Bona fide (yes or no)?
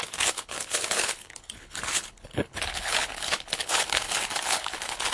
no